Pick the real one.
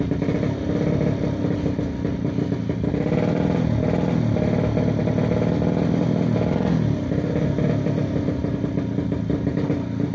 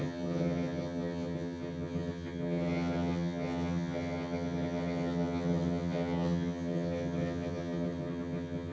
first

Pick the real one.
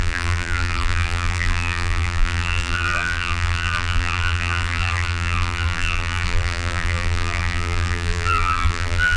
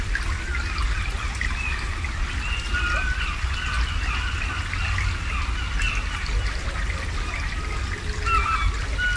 second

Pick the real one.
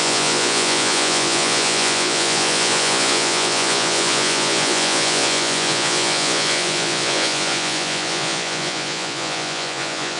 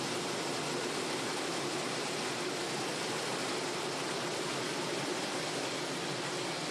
second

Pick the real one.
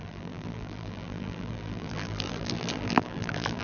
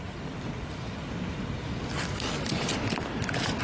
second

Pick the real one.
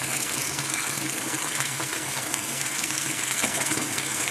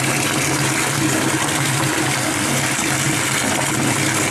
second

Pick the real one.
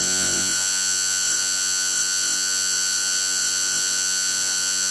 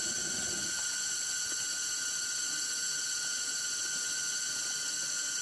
second